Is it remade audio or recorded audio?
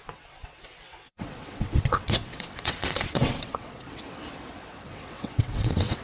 remade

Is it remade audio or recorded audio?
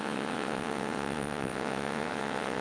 remade